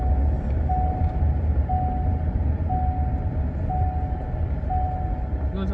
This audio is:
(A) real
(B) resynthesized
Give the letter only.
A